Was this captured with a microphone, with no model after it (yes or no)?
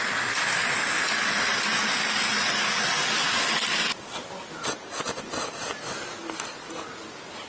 yes